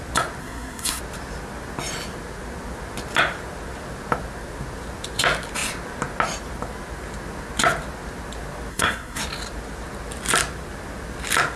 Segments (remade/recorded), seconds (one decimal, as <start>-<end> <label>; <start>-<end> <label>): 0.0-0.4 recorded; 0.4-1.0 remade; 1.0-8.7 recorded; 8.7-9.2 remade; 9.2-11.6 recorded